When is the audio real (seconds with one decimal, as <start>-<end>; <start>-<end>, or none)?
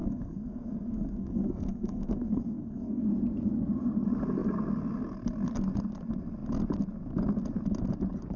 3.0-8.4